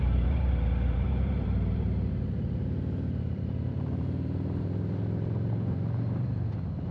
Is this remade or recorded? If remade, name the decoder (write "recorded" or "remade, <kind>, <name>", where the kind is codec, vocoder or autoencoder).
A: remade, vocoder, BigVGAN v2